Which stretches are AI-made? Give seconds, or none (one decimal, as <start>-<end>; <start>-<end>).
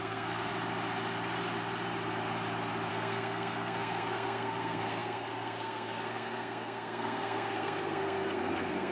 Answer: 0.0-0.5; 2.9-8.9